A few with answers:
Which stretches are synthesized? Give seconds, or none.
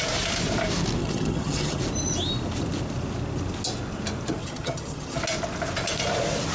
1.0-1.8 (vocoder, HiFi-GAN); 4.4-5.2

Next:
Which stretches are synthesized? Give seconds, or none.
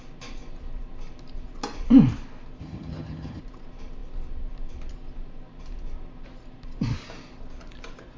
2.6-3.4 (vocoder, HiFi-GAN)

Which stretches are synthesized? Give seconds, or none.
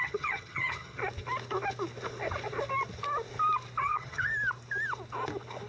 0.0-1.0 (vocoder, HiFi-GAN); 3.8-4.3